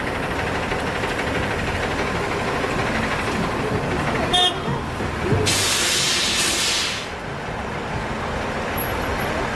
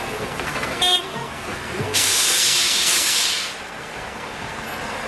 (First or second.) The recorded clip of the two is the first